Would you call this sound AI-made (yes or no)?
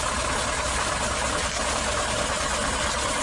no